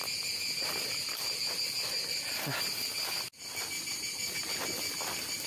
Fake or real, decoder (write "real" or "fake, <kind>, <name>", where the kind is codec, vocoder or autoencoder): real